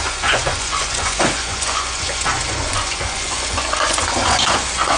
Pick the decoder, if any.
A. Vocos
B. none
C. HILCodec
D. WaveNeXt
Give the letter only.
A